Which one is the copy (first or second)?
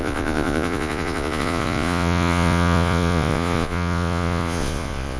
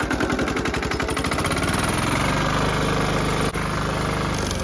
first